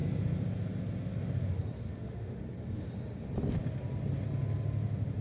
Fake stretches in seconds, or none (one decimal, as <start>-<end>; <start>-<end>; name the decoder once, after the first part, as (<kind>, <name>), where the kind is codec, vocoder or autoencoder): 1.9-2.4 (autoencoder, DAC-VAE)